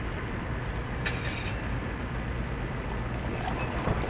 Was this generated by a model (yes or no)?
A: no